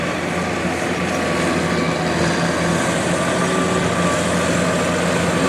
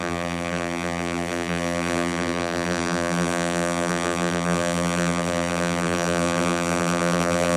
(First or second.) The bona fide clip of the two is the first